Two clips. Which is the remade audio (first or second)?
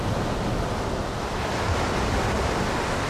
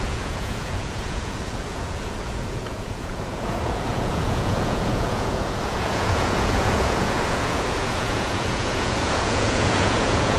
second